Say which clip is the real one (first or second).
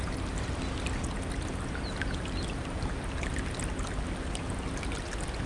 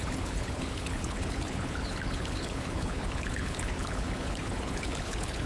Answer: first